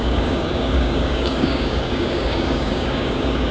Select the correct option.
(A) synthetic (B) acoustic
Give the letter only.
A